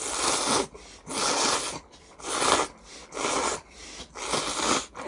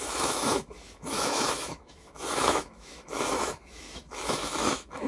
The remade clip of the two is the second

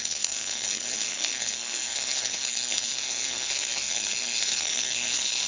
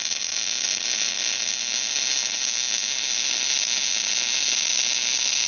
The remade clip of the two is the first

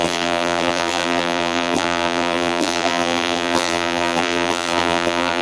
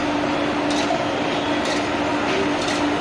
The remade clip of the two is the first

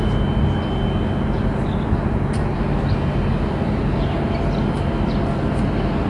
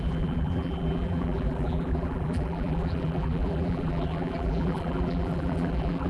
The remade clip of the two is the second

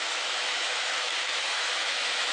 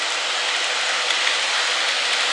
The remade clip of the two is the first